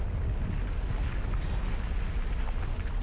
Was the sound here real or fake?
real